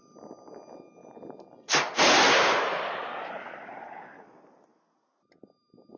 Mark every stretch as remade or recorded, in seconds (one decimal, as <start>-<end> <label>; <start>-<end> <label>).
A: 0.0-6.0 recorded